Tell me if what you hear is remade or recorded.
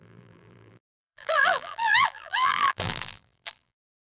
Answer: remade